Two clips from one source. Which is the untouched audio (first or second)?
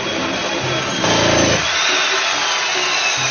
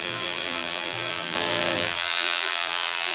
first